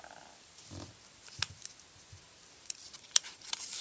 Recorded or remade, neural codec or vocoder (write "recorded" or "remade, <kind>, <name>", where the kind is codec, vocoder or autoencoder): recorded